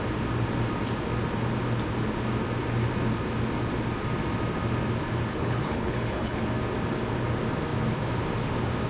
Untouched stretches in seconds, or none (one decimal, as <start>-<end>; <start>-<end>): 0.0-5.3; 6.4-8.9